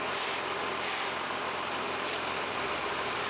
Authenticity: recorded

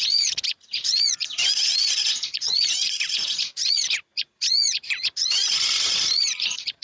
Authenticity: remade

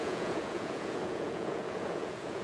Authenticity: remade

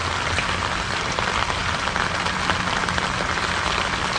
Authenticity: recorded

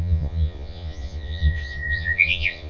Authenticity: remade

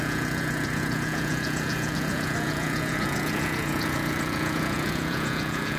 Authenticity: remade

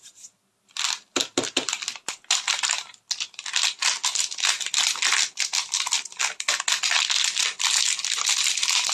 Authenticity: recorded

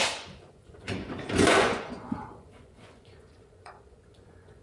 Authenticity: remade